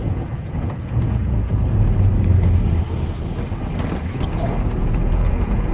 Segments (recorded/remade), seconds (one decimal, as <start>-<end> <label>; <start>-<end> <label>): 0.0-1.4 remade; 1.4-4.8 recorded; 4.8-5.7 remade